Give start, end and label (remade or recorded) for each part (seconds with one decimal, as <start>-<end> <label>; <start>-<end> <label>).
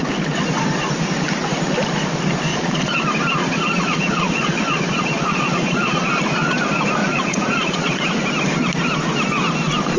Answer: 0.0-2.5 recorded; 2.5-3.0 remade; 3.0-3.4 recorded; 3.4-6.2 remade; 6.2-7.0 recorded; 7.0-8.1 remade; 8.1-10.0 recorded